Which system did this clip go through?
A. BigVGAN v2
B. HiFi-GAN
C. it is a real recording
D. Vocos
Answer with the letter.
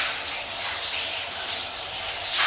C